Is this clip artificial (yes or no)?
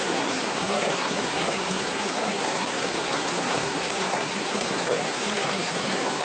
yes